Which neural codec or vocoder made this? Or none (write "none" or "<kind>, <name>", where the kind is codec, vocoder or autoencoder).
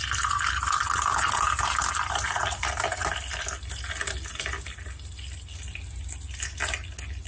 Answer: none